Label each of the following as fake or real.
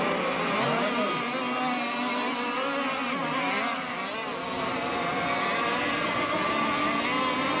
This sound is real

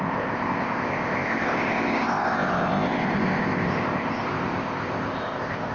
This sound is fake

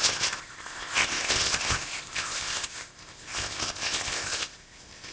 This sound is fake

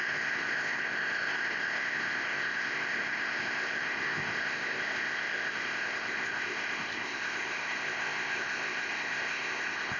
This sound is fake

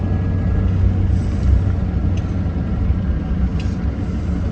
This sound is real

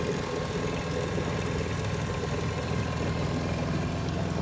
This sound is real